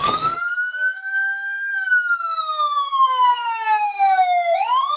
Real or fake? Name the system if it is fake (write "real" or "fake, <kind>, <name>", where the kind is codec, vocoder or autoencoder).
fake, codec, DAC